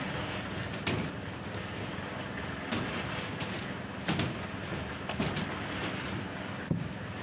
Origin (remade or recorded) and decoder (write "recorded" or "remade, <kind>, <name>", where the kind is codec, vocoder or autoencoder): recorded